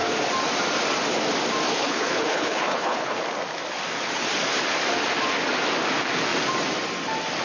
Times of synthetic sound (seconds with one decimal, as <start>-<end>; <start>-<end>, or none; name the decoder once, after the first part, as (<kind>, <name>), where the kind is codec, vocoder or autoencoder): 1.7-3.2 (codec, HILCodec)